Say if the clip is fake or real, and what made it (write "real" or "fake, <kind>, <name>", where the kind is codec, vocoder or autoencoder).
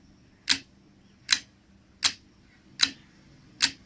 real